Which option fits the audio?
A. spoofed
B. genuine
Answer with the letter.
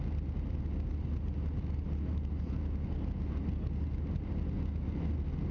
B